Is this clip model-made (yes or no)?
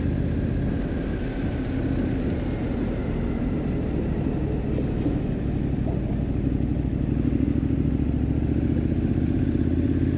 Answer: no